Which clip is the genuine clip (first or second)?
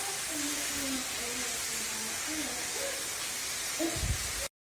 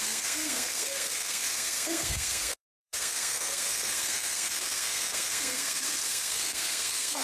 first